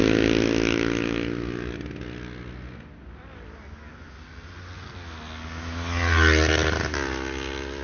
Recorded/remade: recorded